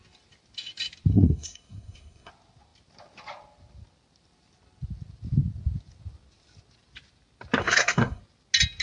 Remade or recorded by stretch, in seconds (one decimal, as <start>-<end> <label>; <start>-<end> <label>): 0.0-1.1 recorded; 1.1-2.3 remade; 2.3-7.6 recorded; 7.6-8.2 remade; 8.2-8.8 recorded